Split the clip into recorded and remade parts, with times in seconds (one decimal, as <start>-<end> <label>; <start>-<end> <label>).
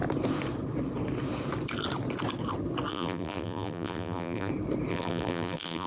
0.0-2.9 recorded; 2.9-4.5 remade; 4.5-4.9 recorded; 4.9-5.9 remade